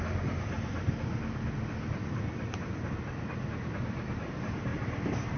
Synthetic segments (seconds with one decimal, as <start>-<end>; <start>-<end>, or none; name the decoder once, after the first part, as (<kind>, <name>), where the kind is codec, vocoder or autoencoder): none